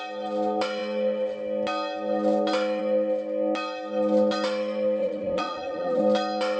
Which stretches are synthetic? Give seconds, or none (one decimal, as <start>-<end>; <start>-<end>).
5.0-6.0

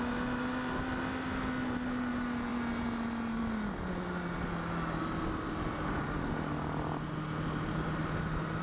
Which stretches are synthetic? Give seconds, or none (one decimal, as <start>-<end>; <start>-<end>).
none

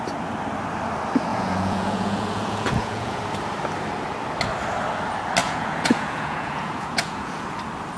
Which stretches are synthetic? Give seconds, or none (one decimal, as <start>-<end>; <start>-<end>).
1.3-3.2; 5.4-7.6

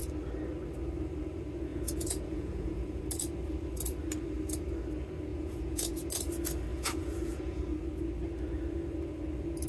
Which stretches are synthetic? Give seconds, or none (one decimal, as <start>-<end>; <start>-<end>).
1.7-3.0; 5.3-6.1; 6.7-7.6

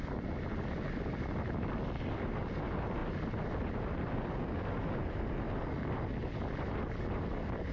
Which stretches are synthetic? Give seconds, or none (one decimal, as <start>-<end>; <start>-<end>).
none

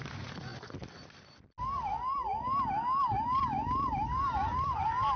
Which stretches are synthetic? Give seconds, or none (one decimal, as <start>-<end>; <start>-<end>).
none